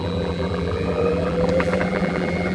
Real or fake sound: fake